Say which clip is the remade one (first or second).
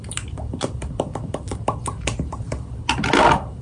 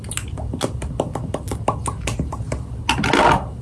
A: first